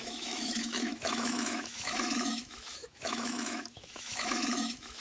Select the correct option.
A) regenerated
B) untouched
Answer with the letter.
A